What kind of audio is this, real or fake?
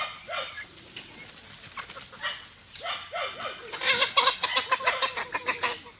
real